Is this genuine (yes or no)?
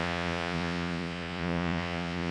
no